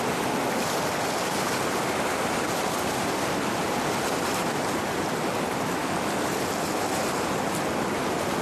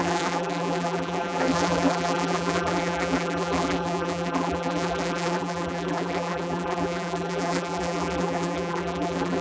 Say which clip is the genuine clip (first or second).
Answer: first